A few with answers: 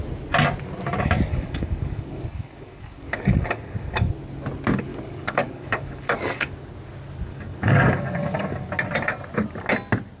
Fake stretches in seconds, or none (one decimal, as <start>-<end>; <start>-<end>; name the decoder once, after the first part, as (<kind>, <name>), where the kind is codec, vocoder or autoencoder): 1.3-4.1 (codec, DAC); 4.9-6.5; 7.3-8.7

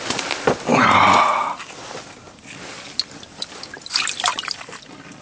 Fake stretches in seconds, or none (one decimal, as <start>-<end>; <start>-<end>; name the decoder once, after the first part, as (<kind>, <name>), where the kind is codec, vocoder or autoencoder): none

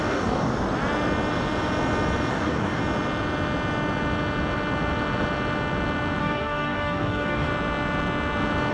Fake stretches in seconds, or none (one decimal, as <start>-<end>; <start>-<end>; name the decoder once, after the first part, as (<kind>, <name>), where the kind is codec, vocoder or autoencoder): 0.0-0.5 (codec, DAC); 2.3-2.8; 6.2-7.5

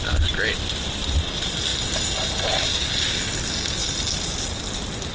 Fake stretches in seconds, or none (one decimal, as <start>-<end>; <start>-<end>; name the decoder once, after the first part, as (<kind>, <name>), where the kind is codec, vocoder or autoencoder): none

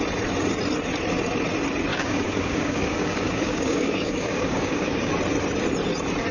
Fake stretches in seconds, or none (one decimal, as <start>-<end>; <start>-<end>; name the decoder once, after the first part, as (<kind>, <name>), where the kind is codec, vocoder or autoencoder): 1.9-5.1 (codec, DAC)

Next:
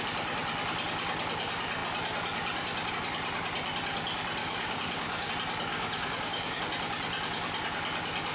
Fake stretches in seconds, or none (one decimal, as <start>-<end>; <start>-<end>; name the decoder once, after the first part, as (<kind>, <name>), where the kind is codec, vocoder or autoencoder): 4.4-5.3 (codec, DAC); 5.7-6.6